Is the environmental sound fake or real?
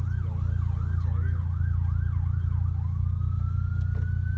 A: real